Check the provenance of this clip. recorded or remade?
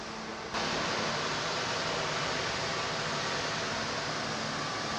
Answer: recorded